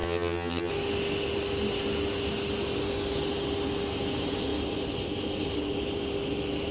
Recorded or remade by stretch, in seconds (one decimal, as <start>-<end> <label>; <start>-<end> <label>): 0.0-0.7 remade; 0.7-6.7 recorded